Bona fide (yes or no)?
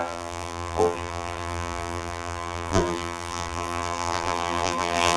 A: no